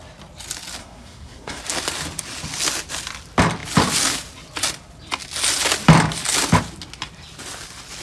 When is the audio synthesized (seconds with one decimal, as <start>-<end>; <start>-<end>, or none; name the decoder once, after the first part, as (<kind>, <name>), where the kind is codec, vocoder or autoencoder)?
0.8-1.6 (codec, SNAC)